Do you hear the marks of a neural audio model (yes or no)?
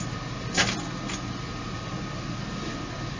no